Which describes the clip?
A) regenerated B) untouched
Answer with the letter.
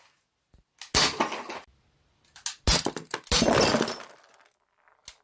B